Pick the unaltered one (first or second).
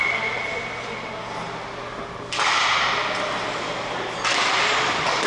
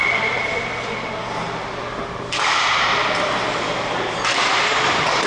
first